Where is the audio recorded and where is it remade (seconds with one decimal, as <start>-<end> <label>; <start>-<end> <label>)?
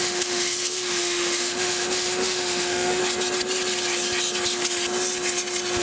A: 0.0-3.0 remade; 3.0-5.8 recorded